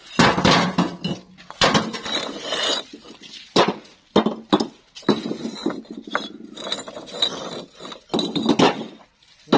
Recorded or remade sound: recorded